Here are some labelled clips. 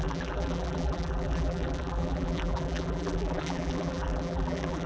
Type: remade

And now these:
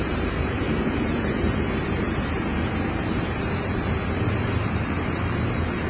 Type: remade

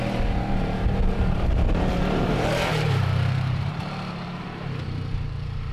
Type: remade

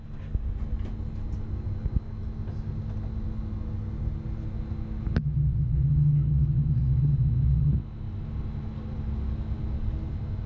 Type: recorded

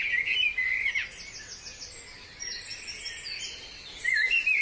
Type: recorded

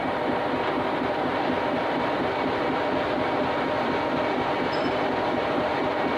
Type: remade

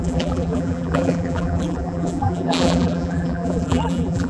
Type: remade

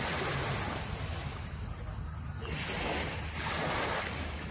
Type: recorded